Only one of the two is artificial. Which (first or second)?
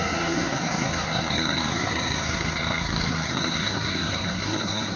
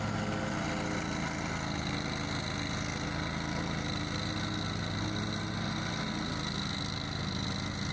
first